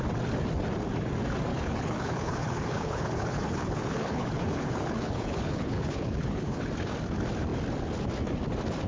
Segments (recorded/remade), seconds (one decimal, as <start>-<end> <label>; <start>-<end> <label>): 0.0-1.5 recorded; 1.5-6.6 remade; 6.6-8.9 recorded